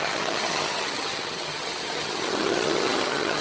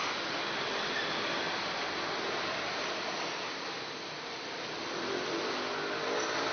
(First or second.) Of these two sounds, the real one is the second